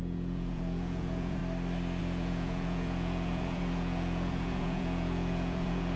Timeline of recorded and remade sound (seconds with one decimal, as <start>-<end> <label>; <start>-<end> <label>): 0.0-1.4 remade; 1.4-2.0 recorded; 2.0-6.0 remade

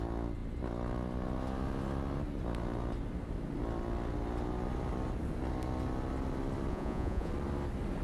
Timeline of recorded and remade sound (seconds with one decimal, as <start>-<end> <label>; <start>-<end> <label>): 0.0-6.7 recorded; 6.7-7.3 remade; 7.3-8.0 recorded

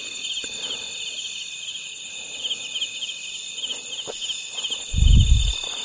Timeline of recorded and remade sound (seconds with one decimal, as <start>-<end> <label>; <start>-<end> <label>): 0.0-5.8 recorded